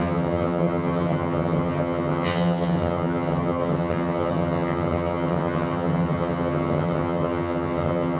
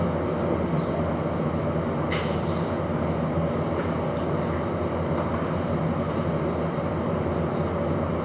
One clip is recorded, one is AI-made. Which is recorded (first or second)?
second